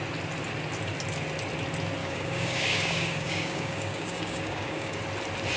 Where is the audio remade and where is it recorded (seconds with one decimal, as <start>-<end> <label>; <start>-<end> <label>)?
0.0-2.0 recorded; 2.0-5.0 remade; 5.0-5.6 recorded